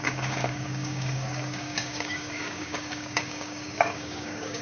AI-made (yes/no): yes